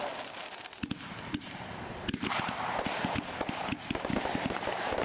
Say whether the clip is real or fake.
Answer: fake